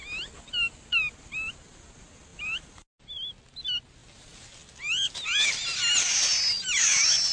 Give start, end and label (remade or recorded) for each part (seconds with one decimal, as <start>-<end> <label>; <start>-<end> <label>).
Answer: 0.0-7.3 recorded